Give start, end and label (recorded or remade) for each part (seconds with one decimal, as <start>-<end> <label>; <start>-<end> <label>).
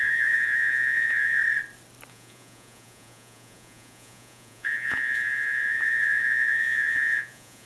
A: 0.0-1.4 remade; 1.4-2.1 recorded; 2.1-7.7 remade